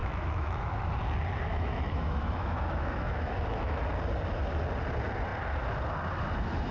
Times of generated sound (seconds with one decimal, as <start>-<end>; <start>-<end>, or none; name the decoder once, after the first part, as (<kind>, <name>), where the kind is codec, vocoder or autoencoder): 0.0-0.7 (autoencoder, DAC-VAE); 1.5-3.8